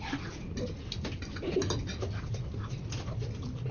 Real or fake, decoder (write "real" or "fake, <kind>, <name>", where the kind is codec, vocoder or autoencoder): real